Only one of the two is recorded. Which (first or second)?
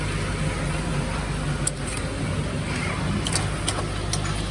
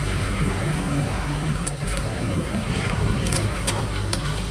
first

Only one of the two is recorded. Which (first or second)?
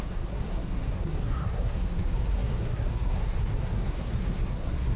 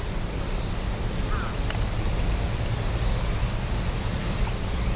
second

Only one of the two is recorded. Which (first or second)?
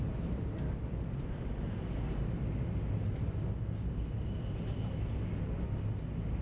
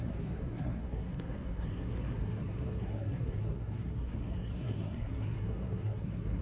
first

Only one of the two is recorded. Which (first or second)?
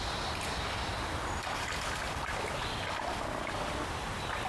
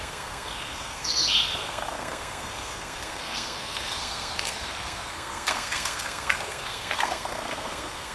first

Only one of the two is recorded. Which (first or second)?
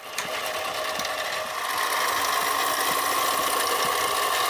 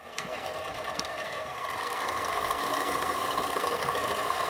first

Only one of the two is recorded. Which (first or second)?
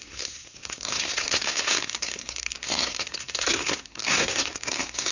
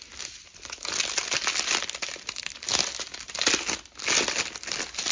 second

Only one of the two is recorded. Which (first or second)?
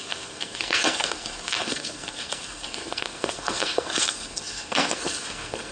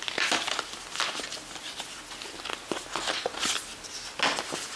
second